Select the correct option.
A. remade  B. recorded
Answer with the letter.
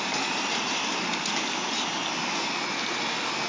B